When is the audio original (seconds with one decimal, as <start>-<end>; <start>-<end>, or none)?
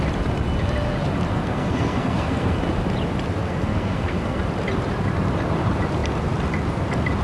0.0-1.3; 2.6-3.4; 4.4-7.2